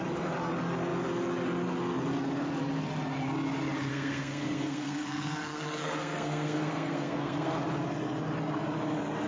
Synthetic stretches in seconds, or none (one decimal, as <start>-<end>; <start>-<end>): 3.9-7.5